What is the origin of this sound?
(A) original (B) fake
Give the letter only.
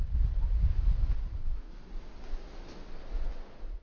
A